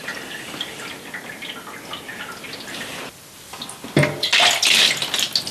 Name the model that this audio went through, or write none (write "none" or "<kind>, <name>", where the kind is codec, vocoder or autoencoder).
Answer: none